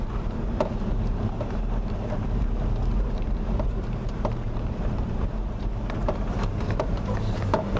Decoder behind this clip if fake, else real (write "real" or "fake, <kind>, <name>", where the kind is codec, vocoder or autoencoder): fake, vocoder, BigVGAN v2